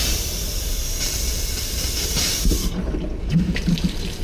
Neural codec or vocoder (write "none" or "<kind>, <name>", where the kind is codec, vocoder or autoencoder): vocoder, BigVGAN v2